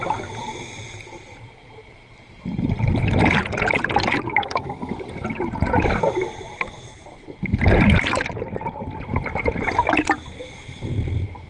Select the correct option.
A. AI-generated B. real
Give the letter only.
A